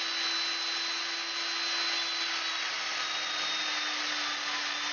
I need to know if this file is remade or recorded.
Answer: recorded